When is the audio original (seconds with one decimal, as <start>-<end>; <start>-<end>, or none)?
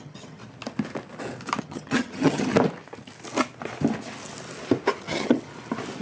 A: 0.4-1.6; 2.5-5.0; 5.5-6.0